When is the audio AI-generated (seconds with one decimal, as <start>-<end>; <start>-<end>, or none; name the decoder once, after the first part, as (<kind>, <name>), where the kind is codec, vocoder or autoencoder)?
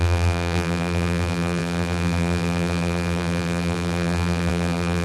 0.0-5.0 (vocoder, BigVGAN v2)